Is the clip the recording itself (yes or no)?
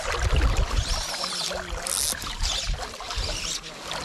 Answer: yes